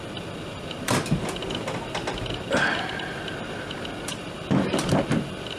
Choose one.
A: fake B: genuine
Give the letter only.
A